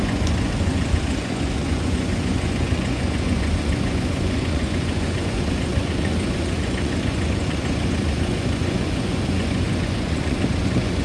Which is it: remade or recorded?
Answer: remade